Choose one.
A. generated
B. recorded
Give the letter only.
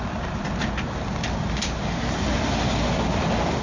B